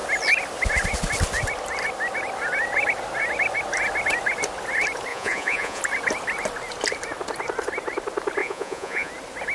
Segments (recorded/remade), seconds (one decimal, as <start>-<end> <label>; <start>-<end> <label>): 0.0-5.1 recorded; 5.1-5.8 remade; 5.8-8.4 recorded; 8.4-9.1 remade; 9.1-9.5 recorded